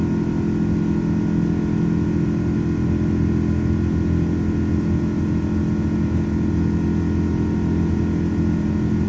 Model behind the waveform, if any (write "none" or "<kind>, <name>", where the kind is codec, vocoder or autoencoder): none